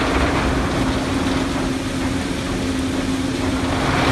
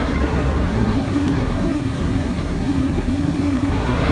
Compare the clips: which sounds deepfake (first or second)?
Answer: second